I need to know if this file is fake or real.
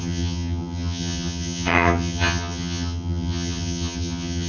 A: fake